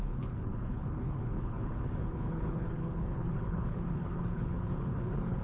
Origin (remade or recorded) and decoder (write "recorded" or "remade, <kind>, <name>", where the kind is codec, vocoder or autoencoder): remade, codec, HILCodec